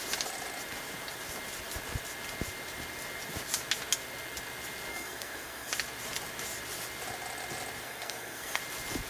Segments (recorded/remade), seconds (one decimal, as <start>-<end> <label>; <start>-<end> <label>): 0.0-4.9 recorded; 4.9-5.7 remade; 5.7-7.8 recorded; 7.8-8.6 remade; 8.6-9.1 recorded